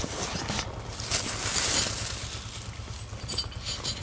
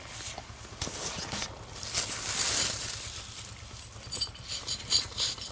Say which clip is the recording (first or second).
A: first